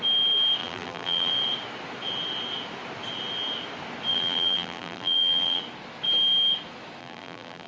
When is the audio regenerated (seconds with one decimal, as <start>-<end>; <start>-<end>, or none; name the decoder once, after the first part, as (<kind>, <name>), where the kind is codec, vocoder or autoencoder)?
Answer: 0.6-1.3 (vocoder, BigVGAN v2); 4.1-5.6; 7.0-7.7